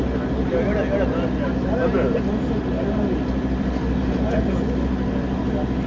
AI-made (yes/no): no